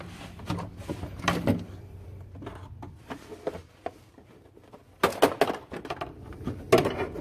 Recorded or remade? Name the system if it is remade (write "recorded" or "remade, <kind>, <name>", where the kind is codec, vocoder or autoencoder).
recorded